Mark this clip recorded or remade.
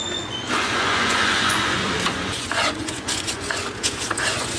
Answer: remade